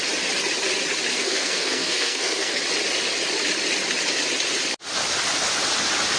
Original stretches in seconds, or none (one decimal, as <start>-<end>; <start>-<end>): 0.0-1.1; 2.6-6.2